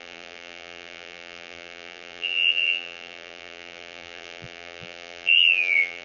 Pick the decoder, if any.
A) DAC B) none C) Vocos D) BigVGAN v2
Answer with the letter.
D